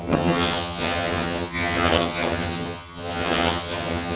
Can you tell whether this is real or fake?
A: fake